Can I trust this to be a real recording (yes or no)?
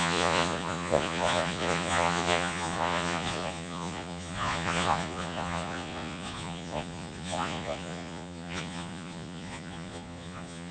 no